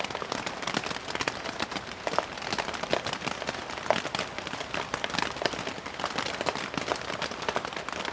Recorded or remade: recorded